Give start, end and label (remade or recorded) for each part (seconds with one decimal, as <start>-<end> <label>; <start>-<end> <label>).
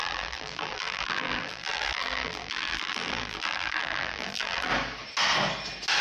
0.0-4.7 remade; 4.7-6.0 recorded